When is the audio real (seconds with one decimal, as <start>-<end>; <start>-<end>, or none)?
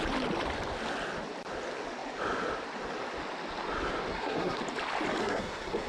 0.0-4.1; 4.6-5.2